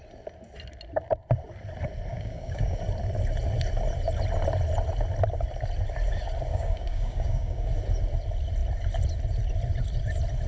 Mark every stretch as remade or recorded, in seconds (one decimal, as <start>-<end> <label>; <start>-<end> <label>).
0.0-2.1 recorded; 2.1-2.8 remade; 2.8-6.5 recorded; 6.5-7.7 remade; 7.7-10.5 recorded